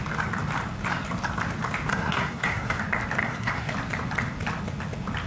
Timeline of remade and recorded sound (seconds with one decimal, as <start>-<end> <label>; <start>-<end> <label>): 0.0-1.9 recorded; 1.9-2.8 remade; 2.8-3.2 recorded; 3.2-3.7 remade; 3.7-5.3 recorded